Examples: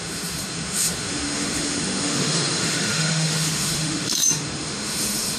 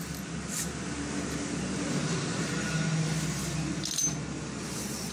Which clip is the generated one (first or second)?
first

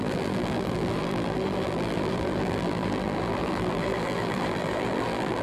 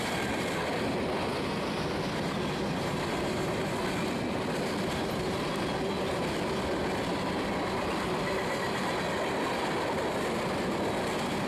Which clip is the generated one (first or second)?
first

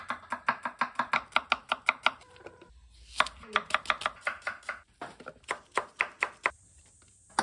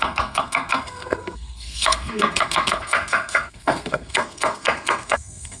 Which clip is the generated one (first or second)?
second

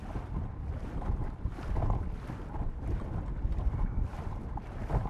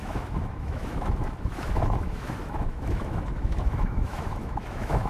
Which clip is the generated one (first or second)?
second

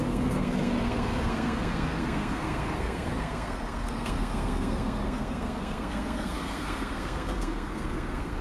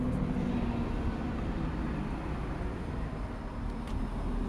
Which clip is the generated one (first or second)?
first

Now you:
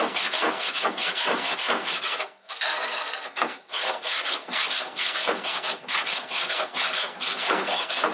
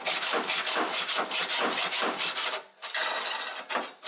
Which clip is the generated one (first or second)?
first